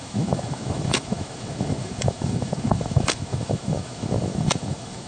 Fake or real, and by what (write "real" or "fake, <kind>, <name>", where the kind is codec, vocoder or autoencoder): fake, autoencoder, DAC-VAE